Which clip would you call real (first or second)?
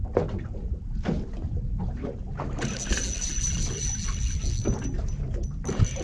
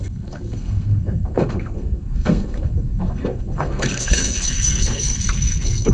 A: first